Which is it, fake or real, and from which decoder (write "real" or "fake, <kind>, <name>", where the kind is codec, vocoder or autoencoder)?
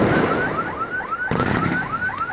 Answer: real